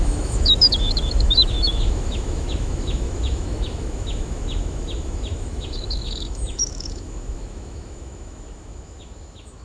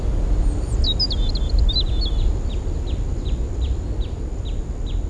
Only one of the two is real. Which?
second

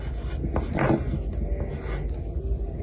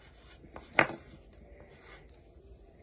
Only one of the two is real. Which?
first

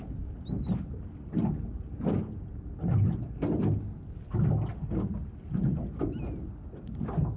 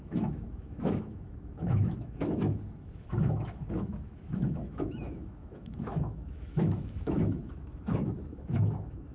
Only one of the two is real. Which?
first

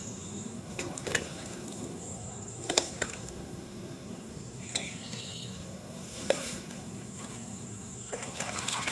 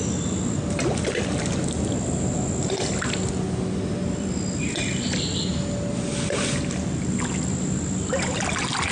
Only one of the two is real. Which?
second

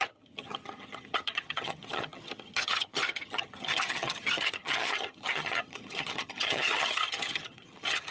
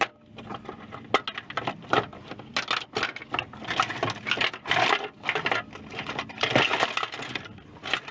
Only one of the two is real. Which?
second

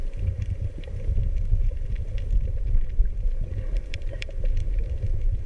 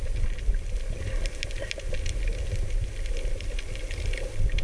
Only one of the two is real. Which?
second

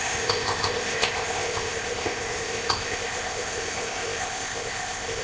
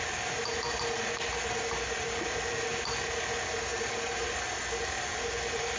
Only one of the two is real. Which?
second